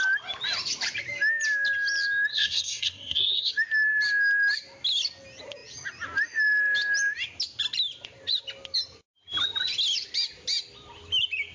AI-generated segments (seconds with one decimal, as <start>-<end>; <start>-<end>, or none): 2.3-3.5